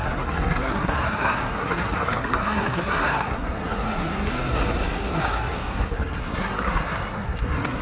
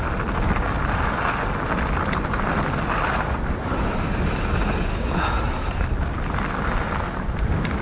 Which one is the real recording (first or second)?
second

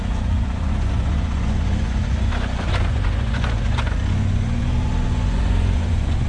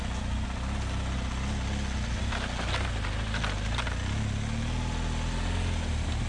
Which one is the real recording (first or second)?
second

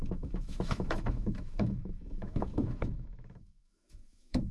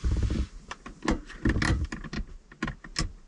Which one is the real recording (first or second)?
second